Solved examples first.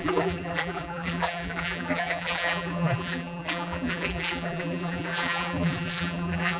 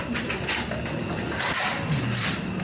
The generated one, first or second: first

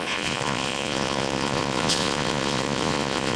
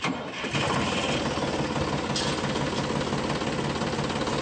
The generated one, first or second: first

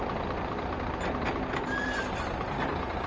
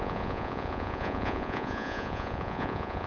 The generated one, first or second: second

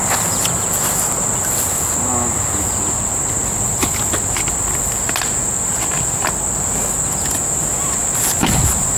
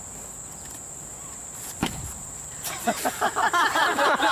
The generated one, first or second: second